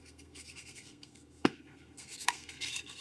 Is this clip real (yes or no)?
no